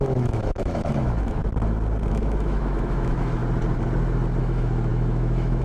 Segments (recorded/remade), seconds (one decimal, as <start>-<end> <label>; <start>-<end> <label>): 0.0-1.4 remade; 1.4-2.1 recorded; 2.1-3.4 remade; 3.4-4.4 recorded; 4.4-5.6 remade